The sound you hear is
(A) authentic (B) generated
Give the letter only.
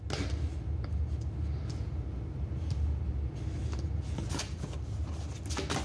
A